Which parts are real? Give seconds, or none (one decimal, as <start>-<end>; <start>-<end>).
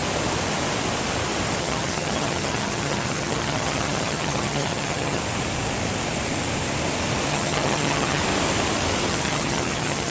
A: 0.0-1.6; 5.2-7.3; 8.2-9.1